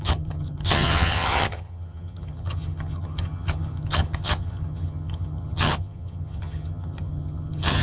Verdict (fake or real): fake